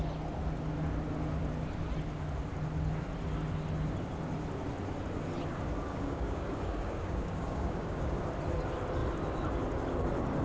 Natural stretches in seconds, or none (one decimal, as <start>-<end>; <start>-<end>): 0.0-5.9; 8.3-10.4